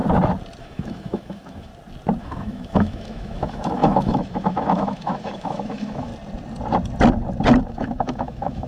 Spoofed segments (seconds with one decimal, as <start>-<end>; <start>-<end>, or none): 0.6-1.7; 2.2-6.1; 7.7-8.7